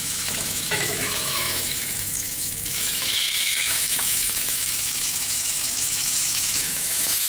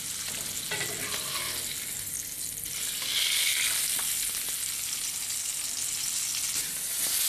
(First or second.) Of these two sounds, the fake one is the first